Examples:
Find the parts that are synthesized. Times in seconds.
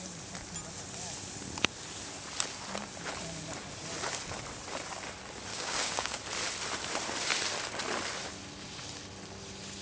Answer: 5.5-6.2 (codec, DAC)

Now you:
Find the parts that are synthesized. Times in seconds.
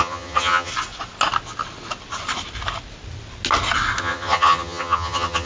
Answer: 0.0-0.7 (vocoder, HiFi-GAN); 4.0-5.5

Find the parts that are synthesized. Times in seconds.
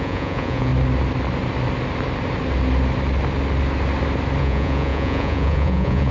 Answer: 0.0-0.7 (vocoder, Vocos); 4.4-6.1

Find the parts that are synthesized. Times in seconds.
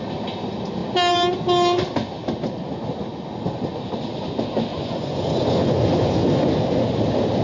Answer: 4.7-6.5 (vocoder, Vocos)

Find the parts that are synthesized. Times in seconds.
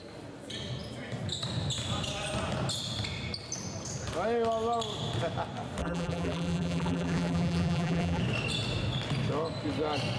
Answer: 5.8-8.2 (vocoder, BigVGAN v2)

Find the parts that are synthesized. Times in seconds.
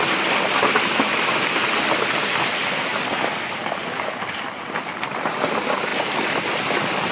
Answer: none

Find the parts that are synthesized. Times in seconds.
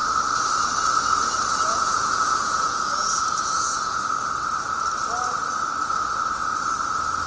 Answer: 1.7-4.0 (vocoder, Vocos)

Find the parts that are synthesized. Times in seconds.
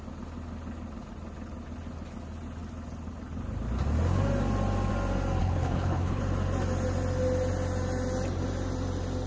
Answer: 5.4-6.2 (codec, HILCodec)